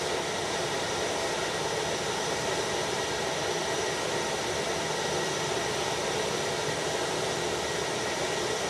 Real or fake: real